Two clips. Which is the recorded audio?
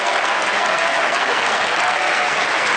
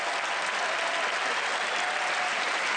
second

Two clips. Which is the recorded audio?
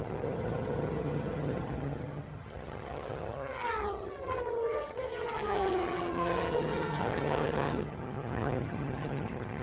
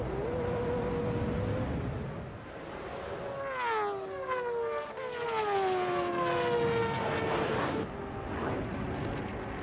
second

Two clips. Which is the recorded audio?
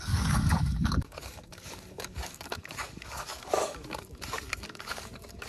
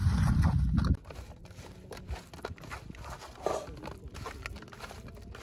second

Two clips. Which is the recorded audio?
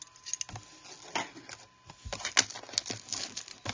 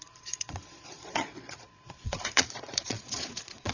first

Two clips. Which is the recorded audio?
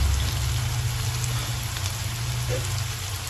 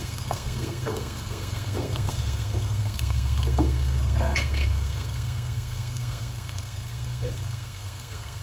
first